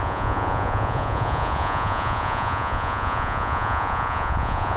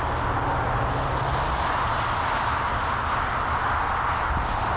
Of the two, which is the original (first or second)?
second